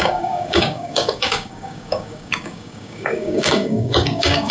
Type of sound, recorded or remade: remade